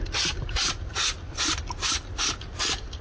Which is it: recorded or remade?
recorded